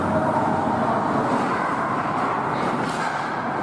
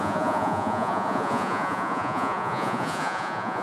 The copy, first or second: second